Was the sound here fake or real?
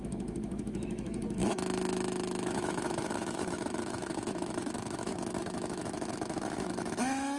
fake